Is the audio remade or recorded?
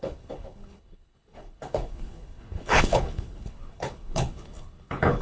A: remade